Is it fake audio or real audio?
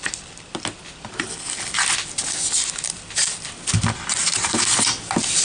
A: real